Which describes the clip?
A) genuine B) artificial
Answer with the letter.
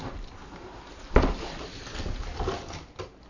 A